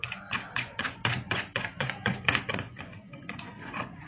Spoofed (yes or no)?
yes